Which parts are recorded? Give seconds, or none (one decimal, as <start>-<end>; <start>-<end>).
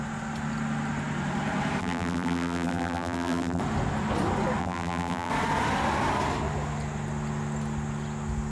0.0-1.8; 3.6-4.6; 5.3-8.5